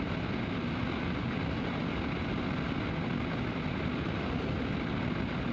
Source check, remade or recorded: recorded